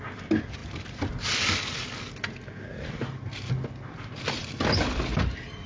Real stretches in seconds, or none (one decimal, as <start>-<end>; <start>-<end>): 0.0-5.7